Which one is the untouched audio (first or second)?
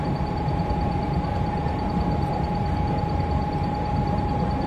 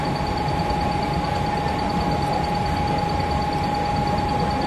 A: second